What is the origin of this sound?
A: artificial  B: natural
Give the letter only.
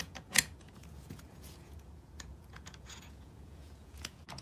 A